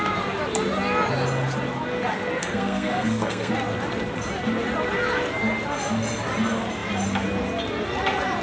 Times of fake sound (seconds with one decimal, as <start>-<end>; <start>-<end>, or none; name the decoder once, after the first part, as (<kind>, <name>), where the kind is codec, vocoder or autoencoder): 2.4-3.5 (codec, SNAC)